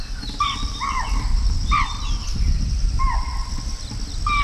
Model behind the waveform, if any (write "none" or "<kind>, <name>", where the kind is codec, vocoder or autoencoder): none